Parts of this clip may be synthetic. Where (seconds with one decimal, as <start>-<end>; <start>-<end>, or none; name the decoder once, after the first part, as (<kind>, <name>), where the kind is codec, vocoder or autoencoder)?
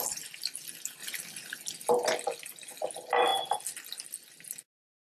none